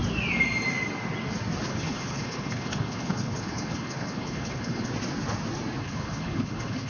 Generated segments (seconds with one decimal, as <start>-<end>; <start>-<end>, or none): 1.7-4.9; 5.8-6.9